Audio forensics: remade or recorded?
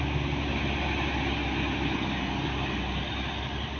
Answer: recorded